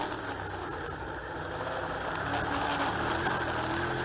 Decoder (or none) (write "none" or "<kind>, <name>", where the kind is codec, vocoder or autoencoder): none